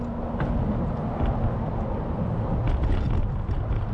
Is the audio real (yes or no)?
yes